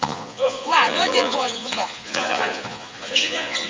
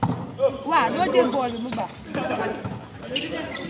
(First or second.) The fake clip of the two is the first